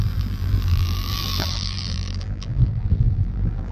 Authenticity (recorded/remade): remade